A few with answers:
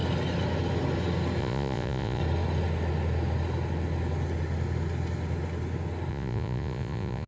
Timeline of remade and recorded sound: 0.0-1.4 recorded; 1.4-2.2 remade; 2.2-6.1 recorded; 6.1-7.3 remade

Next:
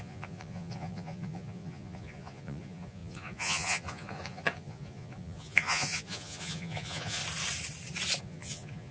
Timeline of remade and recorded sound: 0.0-7.2 remade; 7.2-8.2 recorded; 8.2-8.9 remade

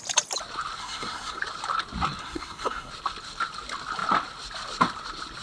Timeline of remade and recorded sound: 0.0-0.8 recorded; 0.8-1.4 remade; 1.4-2.2 recorded; 2.2-2.9 remade; 2.9-5.4 recorded

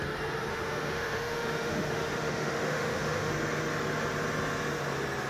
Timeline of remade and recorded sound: 0.0-0.5 recorded; 0.5-3.3 remade; 3.3-5.3 recorded

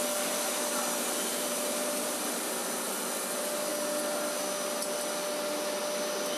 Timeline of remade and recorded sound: 0.0-1.3 recorded; 1.3-2.5 remade; 2.5-6.4 recorded

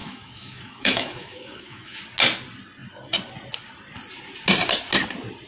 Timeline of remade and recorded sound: 0.0-2.0 remade; 2.0-5.5 recorded

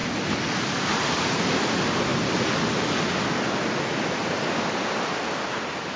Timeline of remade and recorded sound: 0.0-6.0 recorded

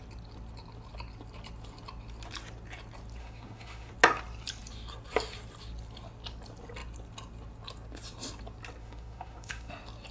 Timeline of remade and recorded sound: 0.0-3.2 recorded; 3.2-3.9 remade; 3.9-8.8 recorded; 8.8-9.7 remade; 9.7-10.1 recorded